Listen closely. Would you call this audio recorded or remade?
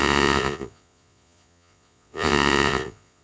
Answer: remade